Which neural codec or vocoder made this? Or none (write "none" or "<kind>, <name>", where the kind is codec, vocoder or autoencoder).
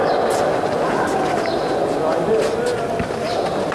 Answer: none